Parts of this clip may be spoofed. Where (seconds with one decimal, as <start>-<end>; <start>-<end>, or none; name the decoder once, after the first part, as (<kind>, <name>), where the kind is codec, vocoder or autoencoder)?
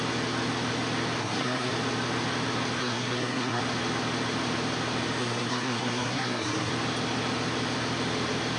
1.2-1.7 (codec, SNAC); 2.8-3.6; 5.2-6.7